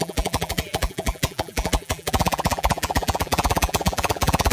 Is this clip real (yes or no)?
no